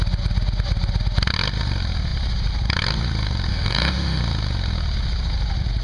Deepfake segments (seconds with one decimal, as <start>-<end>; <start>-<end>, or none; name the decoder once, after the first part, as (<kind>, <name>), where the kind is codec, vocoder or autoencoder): 3.5-4.2 (autoencoder, DAC-VAE)